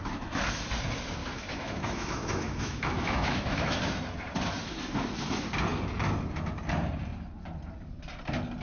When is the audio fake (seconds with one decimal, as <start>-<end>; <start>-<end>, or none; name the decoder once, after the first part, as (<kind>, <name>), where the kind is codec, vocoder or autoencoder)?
1.2-3.8 (autoencoder, DAC-VAE)